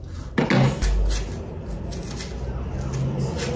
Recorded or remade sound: recorded